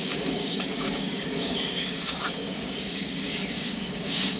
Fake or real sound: fake